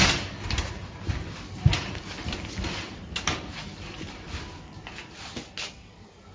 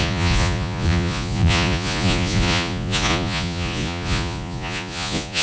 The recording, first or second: first